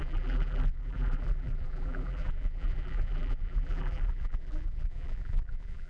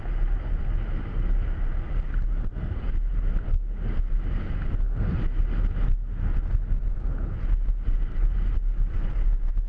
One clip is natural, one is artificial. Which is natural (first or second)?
second